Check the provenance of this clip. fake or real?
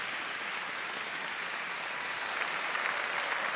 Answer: real